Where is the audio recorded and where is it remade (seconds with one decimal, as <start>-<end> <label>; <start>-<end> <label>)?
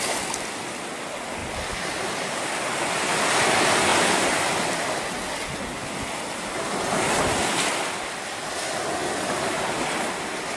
0.0-10.6 recorded